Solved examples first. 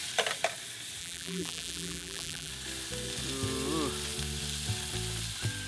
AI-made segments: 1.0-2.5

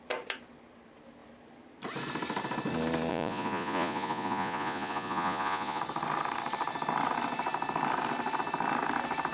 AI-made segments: 3.1-5.8

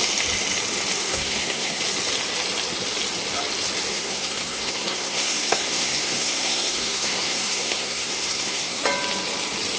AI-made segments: 1.0-1.8; 3.9-8.8